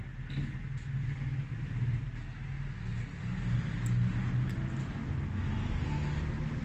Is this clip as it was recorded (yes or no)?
yes